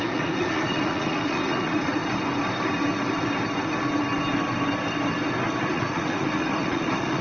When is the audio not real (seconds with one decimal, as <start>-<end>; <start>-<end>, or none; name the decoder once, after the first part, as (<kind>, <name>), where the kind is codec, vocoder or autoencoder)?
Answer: 0.0-2.0 (vocoder, Vocos); 5.6-7.2